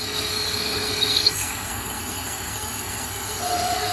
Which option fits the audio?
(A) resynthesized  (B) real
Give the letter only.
A